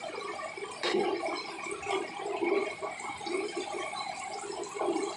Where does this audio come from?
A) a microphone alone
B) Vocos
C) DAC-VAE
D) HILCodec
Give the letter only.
A